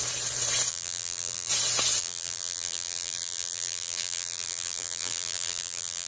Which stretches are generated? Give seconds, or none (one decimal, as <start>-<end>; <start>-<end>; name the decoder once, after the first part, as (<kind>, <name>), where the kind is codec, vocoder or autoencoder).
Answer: 0.7-1.5 (vocoder, BigVGAN v2); 2.0-6.1